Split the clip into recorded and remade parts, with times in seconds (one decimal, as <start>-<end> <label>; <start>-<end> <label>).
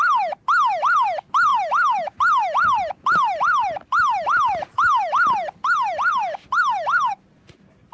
0.0-7.9 recorded